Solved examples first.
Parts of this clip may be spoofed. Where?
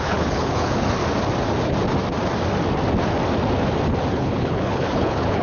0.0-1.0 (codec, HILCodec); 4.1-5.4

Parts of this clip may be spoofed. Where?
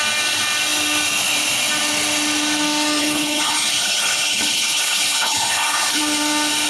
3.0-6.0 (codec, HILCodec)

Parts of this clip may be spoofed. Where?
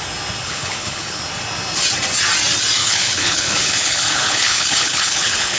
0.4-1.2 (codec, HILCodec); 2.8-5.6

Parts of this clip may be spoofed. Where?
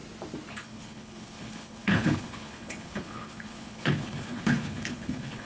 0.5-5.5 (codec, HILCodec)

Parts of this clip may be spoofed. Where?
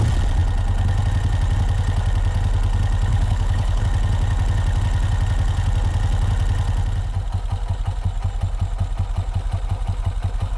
3.1-3.8 (codec, HILCodec)